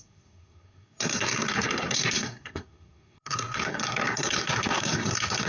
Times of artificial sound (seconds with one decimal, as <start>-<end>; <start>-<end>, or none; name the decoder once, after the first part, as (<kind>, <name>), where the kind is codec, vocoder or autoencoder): 0.0-5.5 (codec, SNAC)